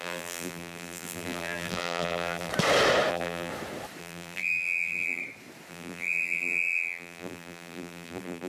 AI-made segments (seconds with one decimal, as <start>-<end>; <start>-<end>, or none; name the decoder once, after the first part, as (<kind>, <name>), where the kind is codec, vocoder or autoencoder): 0.0-2.5 (vocoder, BigVGAN v2); 3.1-3.5; 4.0-5.2; 5.7-8.5